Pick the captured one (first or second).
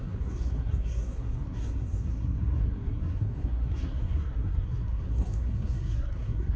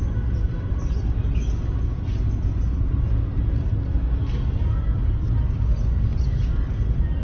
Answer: second